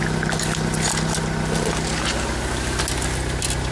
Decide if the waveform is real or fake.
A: real